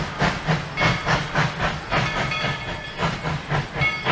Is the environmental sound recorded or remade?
recorded